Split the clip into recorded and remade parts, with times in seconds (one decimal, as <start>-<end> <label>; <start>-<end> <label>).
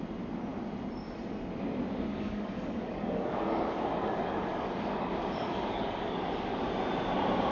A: 0.0-2.1 recorded; 2.1-6.6 remade; 6.6-7.5 recorded